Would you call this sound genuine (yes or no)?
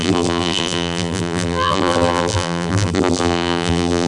no